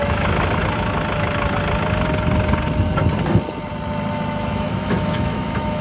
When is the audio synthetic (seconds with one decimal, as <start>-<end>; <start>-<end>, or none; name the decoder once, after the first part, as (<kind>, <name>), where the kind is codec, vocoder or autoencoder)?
0.0-0.6 (autoencoder, DAC-VAE); 4.1-5.8